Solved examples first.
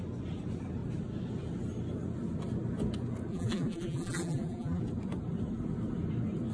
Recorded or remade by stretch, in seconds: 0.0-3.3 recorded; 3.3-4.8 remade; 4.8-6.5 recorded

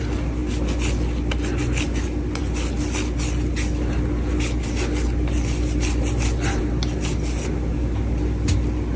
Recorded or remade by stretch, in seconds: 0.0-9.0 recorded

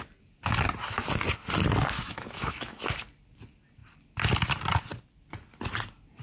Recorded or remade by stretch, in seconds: 0.0-2.0 recorded; 2.0-2.8 remade; 2.8-6.2 recorded

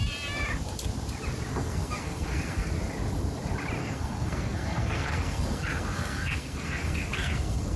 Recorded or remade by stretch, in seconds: 0.0-1.5 recorded; 1.5-2.7 remade; 2.7-3.8 recorded; 3.8-7.8 remade

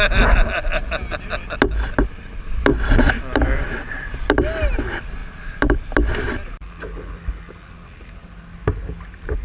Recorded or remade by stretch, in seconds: 0.0-2.7 recorded; 2.7-4.3 remade; 4.3-5.2 recorded; 5.2-6.3 remade; 6.3-9.4 recorded

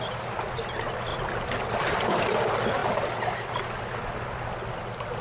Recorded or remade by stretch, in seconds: 0.0-5.2 recorded

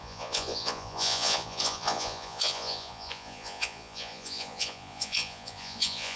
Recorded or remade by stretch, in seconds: 0.0-6.2 remade